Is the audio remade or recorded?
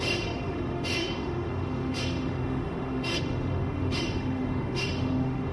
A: remade